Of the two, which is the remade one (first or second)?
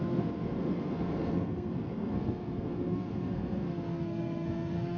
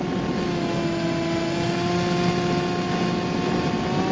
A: first